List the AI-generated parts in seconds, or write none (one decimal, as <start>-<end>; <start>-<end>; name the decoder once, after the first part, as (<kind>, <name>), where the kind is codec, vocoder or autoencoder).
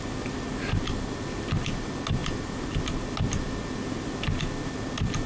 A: none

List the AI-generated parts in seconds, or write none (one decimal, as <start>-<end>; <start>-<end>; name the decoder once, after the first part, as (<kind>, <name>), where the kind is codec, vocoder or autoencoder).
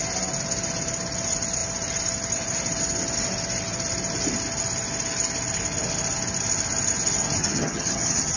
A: 7.4-8.4 (vocoder, HiFi-GAN)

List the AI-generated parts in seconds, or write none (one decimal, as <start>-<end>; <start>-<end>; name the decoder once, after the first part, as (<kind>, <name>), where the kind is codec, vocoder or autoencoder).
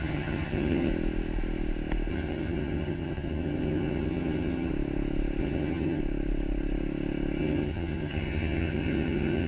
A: 0.0-0.9 (vocoder, HiFi-GAN); 2.1-4.7; 5.4-6.0; 7.4-9.5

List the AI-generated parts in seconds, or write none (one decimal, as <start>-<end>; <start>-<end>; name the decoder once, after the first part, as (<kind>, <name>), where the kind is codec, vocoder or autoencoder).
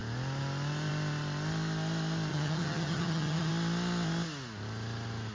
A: 2.3-3.5 (vocoder, HiFi-GAN)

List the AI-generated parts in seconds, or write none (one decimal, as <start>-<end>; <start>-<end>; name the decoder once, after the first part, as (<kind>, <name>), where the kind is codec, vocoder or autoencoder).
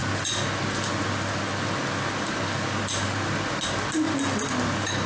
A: none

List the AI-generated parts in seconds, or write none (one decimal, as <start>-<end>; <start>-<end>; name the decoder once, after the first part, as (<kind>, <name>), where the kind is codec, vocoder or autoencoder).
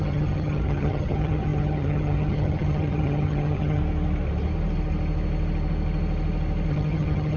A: 0.0-3.8 (vocoder, HiFi-GAN); 6.7-7.4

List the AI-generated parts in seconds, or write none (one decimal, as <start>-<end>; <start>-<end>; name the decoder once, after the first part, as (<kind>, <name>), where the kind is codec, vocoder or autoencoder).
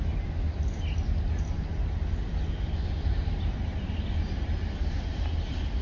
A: none